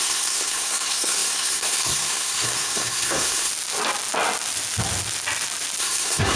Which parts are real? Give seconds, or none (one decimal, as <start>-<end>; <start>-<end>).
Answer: 3.5-5.8